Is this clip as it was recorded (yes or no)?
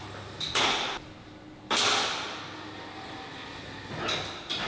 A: yes